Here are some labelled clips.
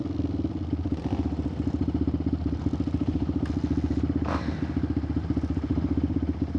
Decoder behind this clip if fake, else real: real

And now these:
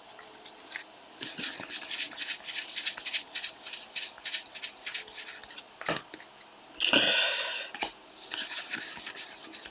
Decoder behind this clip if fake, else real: real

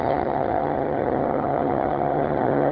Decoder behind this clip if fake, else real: fake, vocoder, HiFi-GAN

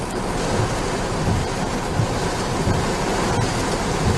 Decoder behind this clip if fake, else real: real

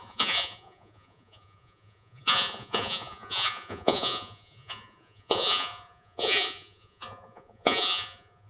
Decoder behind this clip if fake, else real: fake, vocoder, Vocos